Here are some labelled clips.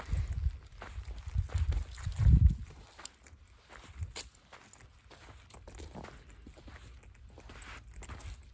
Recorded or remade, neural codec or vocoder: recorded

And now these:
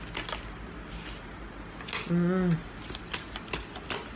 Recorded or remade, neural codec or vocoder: recorded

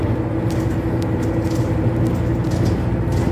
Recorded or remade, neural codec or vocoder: recorded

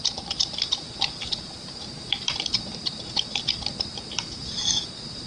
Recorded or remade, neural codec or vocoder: remade, vocoder, BigVGAN v2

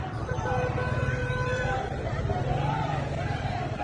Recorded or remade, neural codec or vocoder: remade, vocoder, BigVGAN v2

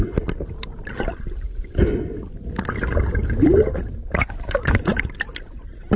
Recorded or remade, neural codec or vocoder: recorded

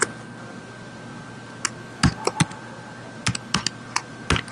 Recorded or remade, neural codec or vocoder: recorded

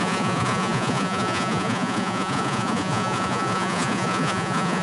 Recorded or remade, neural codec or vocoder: remade, vocoder, Vocos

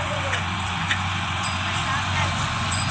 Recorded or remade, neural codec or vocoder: remade, vocoder, Vocos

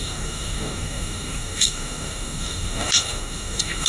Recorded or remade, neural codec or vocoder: remade, codec, DAC